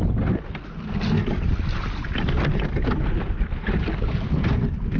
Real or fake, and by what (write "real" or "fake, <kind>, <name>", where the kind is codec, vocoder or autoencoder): real